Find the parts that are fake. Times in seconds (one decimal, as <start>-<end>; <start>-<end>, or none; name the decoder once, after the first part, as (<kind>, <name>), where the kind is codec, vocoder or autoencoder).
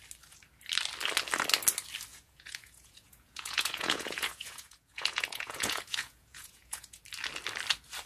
2.1-7.0 (vocoder, Vocos)